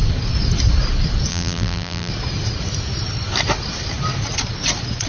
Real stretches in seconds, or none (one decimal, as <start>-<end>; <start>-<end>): 0.0-1.3; 2.1-5.1